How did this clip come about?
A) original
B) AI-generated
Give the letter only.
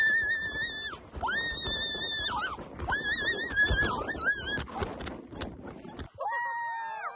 A